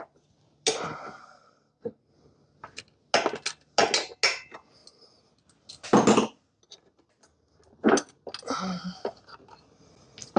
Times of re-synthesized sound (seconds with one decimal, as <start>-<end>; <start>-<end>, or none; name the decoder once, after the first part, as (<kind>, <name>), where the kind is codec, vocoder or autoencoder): 1.2-2.0 (codec, SNAC)

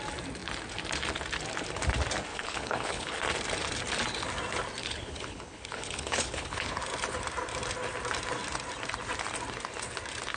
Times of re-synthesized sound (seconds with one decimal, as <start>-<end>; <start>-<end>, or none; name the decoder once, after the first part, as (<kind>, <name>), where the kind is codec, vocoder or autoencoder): 2.3-3.2 (codec, HILCodec); 4.8-6.8

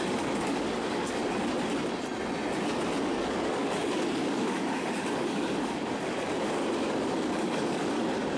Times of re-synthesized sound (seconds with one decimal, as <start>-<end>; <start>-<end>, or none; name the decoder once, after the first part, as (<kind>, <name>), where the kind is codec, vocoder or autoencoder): 0.0-1.2 (codec, DAC); 3.0-8.4

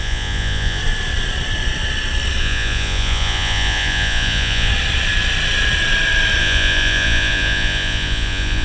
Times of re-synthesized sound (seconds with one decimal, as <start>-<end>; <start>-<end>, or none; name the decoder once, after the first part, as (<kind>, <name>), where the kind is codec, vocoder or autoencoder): 0.0-0.8 (vocoder, Vocos); 2.4-4.7; 6.4-8.6

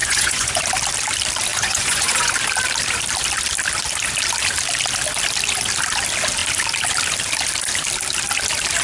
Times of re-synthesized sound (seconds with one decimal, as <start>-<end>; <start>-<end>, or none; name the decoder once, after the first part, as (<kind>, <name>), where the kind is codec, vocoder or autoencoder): 0.0-0.6 (vocoder, Vocos); 1.5-2.3